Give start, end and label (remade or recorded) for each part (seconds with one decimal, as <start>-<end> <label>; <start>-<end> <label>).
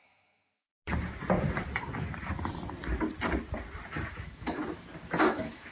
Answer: 0.0-0.7 remade; 0.7-4.1 recorded; 4.1-4.6 remade; 4.6-5.2 recorded; 5.2-5.7 remade